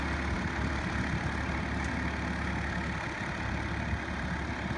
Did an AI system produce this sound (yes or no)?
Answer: no